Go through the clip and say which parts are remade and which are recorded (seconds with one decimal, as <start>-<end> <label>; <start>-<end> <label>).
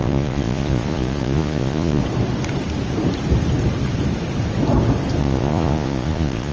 0.0-2.0 remade; 2.0-5.2 recorded; 5.2-6.5 remade